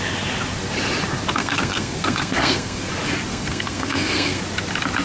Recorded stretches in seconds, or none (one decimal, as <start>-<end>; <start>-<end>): 0.0-1.4; 2.9-3.3; 4.4-5.0